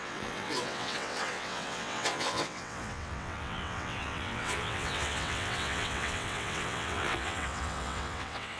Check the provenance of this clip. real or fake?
fake